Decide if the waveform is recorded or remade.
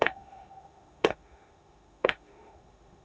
remade